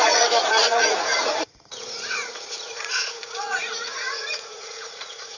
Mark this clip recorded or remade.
remade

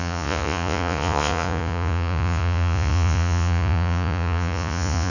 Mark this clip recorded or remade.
remade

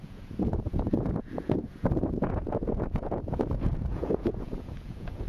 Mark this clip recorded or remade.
remade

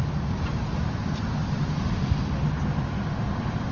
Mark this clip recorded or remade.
recorded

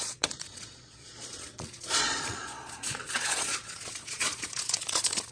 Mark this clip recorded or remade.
remade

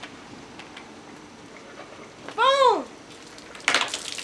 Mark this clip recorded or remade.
recorded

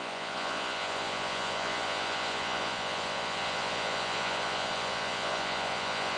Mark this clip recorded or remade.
remade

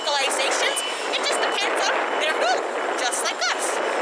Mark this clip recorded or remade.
recorded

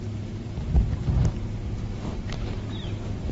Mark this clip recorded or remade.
recorded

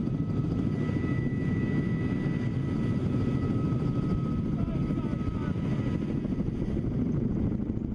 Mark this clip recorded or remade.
recorded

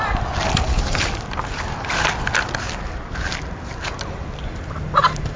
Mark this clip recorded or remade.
recorded